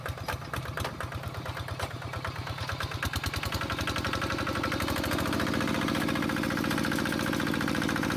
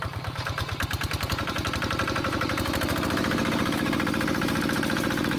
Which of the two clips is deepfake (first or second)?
second